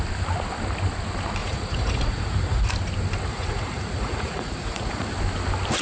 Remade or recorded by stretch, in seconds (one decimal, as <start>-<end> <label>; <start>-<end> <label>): 0.0-1.4 recorded; 1.4-2.7 remade; 2.7-3.3 recorded; 3.3-5.1 remade; 5.1-5.8 recorded